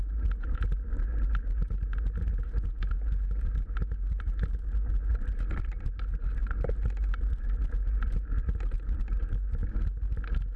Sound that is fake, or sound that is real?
real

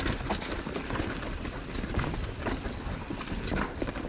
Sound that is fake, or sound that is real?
real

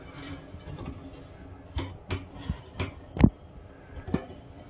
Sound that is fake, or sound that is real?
real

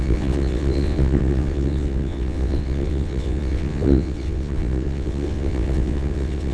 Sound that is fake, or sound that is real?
fake